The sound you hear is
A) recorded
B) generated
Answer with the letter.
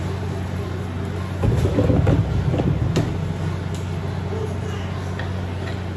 A